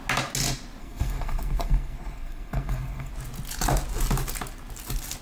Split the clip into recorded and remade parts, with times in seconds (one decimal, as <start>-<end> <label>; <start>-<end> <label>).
0.0-0.8 recorded; 0.8-3.1 remade; 3.1-5.2 recorded